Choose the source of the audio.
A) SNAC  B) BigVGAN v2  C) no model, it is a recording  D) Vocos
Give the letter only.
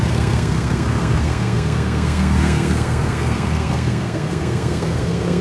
A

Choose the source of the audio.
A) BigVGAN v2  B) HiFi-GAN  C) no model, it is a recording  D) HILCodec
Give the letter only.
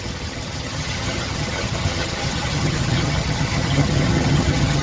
B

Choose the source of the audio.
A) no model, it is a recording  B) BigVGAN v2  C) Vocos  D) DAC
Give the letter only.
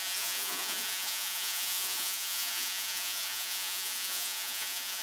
C